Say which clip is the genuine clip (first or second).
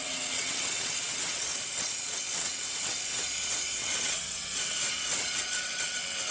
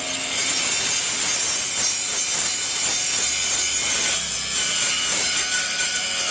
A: second